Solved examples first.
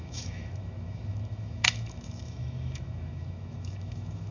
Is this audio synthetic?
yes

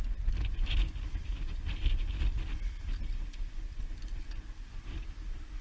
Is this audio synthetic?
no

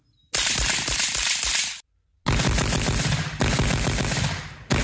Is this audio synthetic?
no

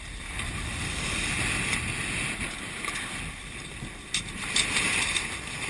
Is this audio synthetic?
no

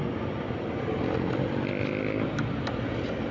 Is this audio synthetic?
no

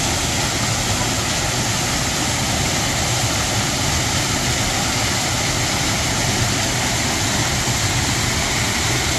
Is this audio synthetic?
no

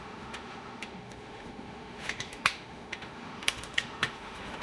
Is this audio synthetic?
yes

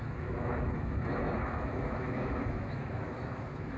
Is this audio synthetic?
yes